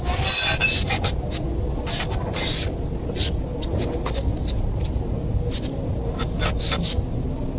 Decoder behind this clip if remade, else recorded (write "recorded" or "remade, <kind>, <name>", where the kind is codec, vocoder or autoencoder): recorded